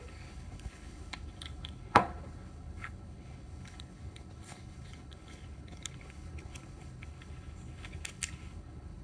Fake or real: fake